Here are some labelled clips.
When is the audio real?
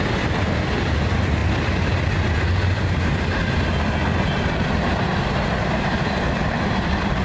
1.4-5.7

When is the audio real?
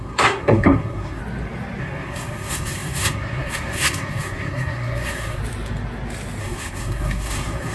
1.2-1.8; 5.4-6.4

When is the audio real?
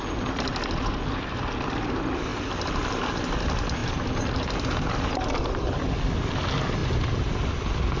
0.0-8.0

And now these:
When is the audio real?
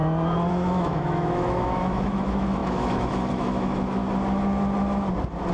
0.0-0.5; 4.0-5.5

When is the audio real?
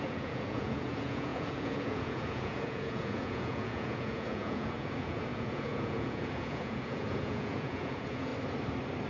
8.3-9.1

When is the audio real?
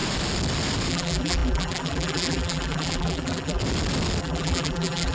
0.0-0.9; 3.6-4.2